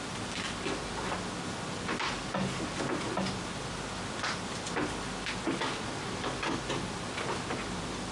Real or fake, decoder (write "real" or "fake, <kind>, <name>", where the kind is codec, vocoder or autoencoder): real